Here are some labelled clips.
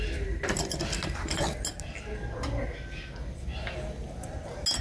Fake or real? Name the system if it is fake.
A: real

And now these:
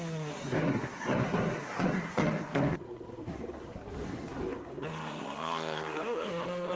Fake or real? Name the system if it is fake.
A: fake, codec, SNAC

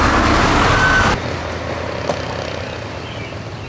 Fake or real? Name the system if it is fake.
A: real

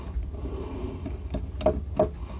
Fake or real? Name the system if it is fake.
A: real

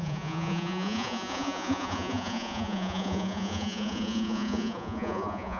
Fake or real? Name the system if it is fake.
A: fake, vocoder, Vocos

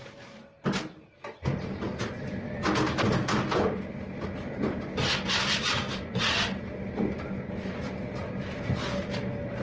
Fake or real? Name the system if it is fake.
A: real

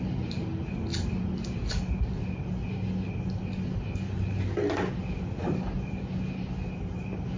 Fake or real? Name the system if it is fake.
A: real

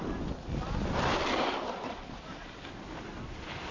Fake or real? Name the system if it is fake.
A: real